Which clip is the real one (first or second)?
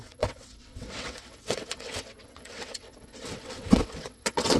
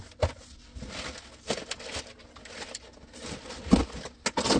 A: second